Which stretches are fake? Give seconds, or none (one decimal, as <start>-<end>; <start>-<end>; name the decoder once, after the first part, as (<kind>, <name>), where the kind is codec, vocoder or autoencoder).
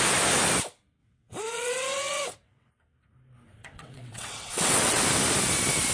1.0-2.7 (vocoder, WaveNeXt); 3.6-5.0